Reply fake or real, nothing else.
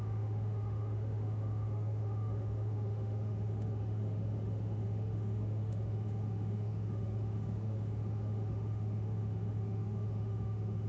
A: fake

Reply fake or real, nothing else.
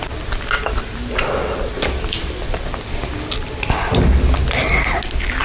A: real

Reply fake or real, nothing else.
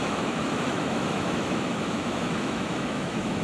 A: fake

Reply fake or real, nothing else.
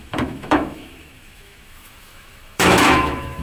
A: fake